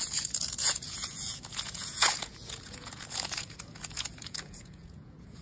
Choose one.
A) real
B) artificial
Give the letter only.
B